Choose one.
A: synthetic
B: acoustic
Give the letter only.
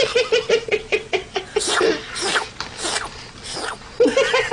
B